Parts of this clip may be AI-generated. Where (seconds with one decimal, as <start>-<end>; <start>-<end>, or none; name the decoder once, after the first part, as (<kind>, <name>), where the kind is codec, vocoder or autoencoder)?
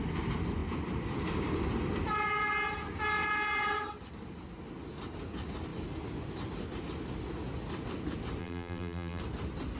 8.4-9.2 (vocoder, BigVGAN v2)